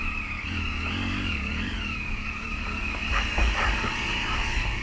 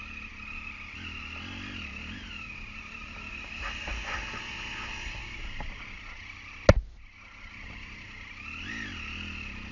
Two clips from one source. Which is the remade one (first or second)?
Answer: first